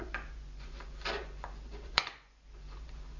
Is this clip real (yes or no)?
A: no